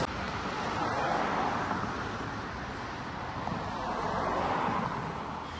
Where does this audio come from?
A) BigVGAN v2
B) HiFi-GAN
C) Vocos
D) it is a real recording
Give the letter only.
D